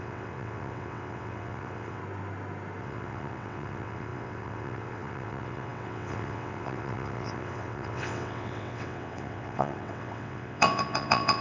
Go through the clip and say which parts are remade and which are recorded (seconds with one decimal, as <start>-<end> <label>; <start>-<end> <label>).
0.0-2.0 remade; 2.0-2.8 recorded; 2.8-11.4 remade